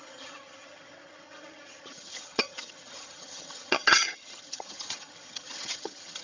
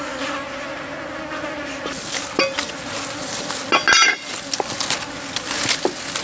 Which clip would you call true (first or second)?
second